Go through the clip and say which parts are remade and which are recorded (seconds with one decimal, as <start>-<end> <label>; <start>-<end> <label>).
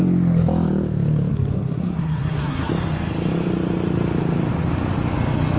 0.0-1.3 recorded; 1.3-2.7 remade; 2.7-5.6 recorded